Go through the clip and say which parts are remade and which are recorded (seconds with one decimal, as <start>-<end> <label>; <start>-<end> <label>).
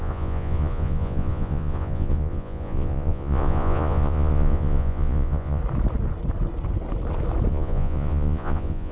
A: 0.0-5.6 remade; 5.6-7.5 recorded; 7.5-8.9 remade